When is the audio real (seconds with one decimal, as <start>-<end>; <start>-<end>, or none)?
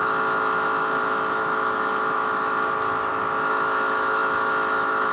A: none